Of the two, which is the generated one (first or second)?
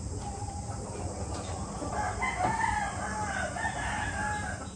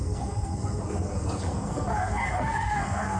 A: second